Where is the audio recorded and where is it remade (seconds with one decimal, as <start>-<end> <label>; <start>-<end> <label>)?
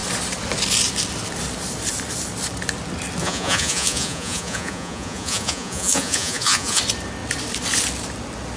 0.0-3.2 recorded; 3.2-6.8 remade; 6.8-8.6 recorded